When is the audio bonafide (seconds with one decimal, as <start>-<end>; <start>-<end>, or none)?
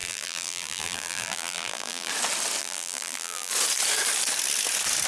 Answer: 2.1-2.6; 3.5-5.1